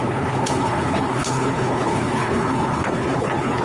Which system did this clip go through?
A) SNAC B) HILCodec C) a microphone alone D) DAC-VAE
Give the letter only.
B